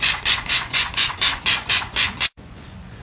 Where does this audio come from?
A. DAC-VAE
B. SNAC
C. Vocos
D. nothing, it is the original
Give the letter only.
C